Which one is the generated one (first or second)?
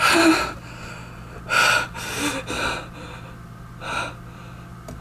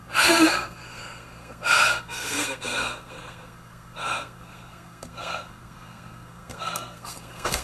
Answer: second